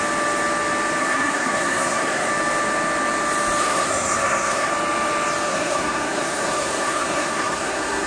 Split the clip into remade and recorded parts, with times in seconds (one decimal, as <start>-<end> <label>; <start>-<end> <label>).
0.0-1.0 recorded; 1.0-2.3 remade; 2.3-3.6 recorded; 3.6-4.7 remade; 4.7-5.5 recorded; 5.5-8.1 remade